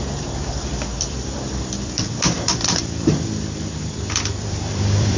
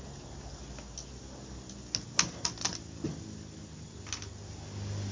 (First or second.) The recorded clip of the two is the second